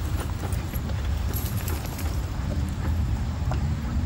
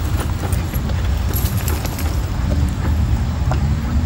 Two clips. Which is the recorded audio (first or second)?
second